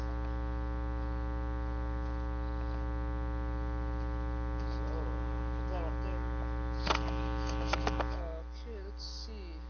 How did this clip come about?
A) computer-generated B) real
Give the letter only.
B